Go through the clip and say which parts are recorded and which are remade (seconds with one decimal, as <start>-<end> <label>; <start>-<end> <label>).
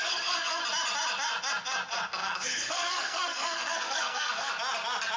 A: 0.0-0.6 remade; 0.6-2.2 recorded; 2.2-4.5 remade; 4.5-5.2 recorded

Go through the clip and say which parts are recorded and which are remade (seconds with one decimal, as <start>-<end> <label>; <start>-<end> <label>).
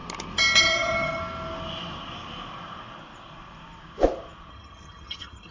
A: 0.0-0.6 recorded; 0.6-1.2 remade; 1.2-4.5 recorded; 4.5-5.5 remade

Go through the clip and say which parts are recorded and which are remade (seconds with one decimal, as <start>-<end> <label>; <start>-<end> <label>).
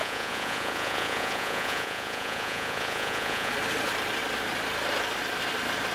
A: 0.0-3.5 remade; 3.5-5.9 recorded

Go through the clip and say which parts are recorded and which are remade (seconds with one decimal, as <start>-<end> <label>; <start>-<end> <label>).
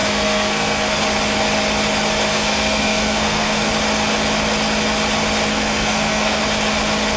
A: 0.0-1.0 remade; 1.0-2.3 recorded; 2.3-3.7 remade; 3.7-5.5 recorded; 5.5-6.4 remade; 6.4-7.2 recorded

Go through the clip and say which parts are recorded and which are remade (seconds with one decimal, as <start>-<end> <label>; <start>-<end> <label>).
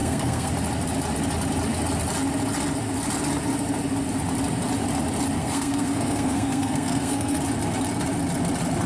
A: 0.0-0.5 remade; 0.5-5.4 recorded; 5.4-7.4 remade; 7.4-8.9 recorded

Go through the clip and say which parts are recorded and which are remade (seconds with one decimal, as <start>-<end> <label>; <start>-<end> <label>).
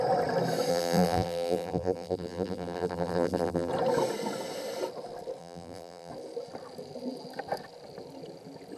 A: 0.0-0.7 recorded; 0.7-3.7 remade; 3.7-5.4 recorded; 5.4-6.1 remade; 6.1-8.8 recorded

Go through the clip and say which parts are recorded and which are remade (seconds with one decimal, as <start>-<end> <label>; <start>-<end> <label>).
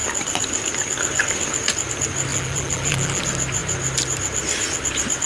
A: 0.0-2.3 recorded; 2.3-3.2 remade; 3.2-5.3 recorded